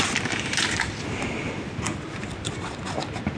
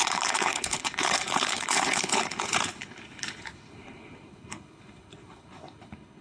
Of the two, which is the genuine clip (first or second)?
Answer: first